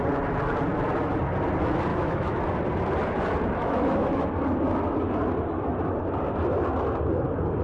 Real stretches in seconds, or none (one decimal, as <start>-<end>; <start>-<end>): 0.0-1.9; 2.4-3.6; 4.3-7.6